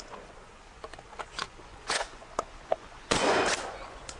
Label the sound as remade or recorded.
remade